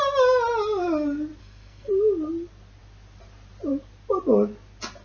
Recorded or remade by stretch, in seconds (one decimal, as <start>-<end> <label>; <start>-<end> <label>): 0.0-1.4 recorded; 1.4-1.9 remade; 1.9-5.0 recorded